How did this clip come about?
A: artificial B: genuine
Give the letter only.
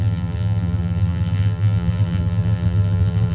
A